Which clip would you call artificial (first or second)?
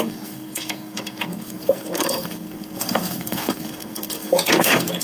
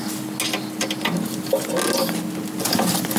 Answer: first